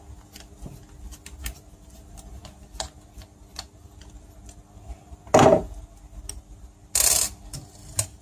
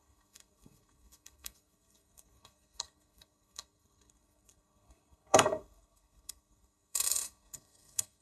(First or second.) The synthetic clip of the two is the second